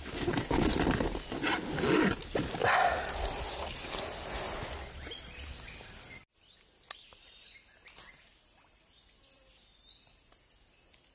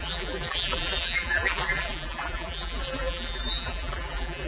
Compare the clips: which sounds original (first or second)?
first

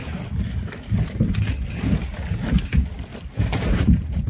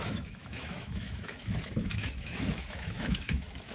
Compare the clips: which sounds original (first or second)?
first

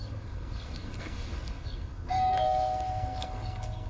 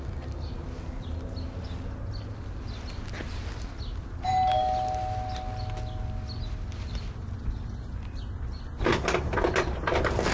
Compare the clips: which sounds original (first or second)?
second